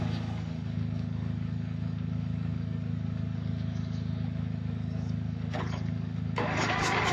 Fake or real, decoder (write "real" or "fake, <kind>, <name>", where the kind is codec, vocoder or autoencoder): fake, codec, DAC